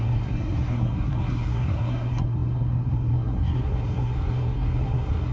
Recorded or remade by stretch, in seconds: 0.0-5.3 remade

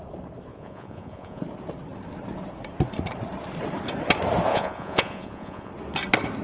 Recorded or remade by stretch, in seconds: 0.0-0.5 recorded; 0.5-1.4 remade; 1.4-4.5 recorded; 4.5-5.7 remade; 5.7-6.4 recorded

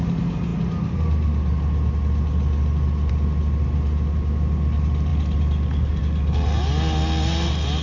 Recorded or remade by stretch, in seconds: 0.0-7.8 recorded